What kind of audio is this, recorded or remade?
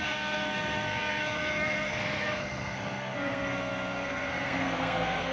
remade